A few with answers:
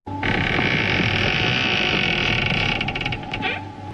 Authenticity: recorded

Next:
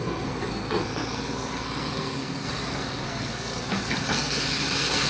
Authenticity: remade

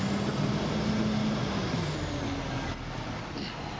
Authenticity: recorded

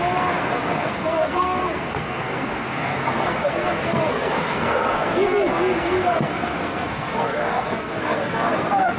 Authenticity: remade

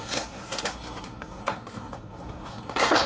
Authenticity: remade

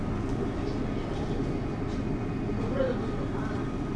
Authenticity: recorded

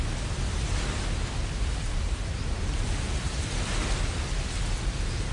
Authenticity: recorded